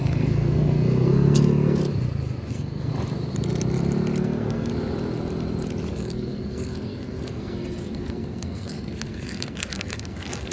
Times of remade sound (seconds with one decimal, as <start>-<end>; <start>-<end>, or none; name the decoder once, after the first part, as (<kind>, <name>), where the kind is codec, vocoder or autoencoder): 0.0-1.8 (codec, SNAC); 2.5-2.9; 4.2-4.7; 5.9-10.5